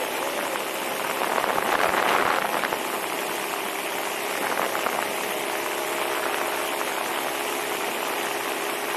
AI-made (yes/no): no